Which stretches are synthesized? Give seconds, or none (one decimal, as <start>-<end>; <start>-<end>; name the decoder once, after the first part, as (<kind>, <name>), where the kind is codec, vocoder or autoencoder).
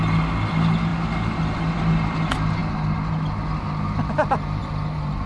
none